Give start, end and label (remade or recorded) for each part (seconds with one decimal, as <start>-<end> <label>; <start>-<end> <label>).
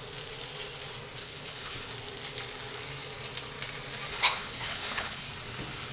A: 0.0-1.2 recorded; 1.2-1.9 remade; 1.9-4.1 recorded; 4.1-5.3 remade; 5.3-5.9 recorded